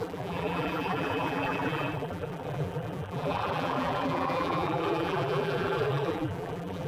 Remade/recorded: remade